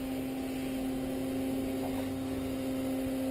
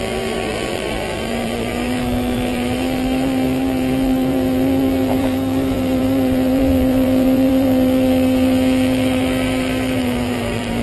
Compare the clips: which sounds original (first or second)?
first